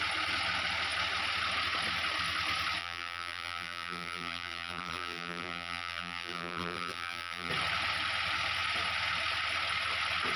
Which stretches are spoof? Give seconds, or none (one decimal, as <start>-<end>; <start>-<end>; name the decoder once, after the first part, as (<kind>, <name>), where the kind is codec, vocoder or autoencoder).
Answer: 2.8-7.5 (vocoder, BigVGAN v2)